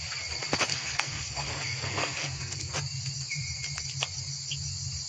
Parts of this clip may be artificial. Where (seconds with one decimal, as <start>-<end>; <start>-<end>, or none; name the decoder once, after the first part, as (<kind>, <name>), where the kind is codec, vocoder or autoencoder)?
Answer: 0.7-2.7 (codec, SNAC)